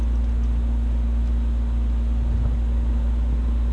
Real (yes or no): yes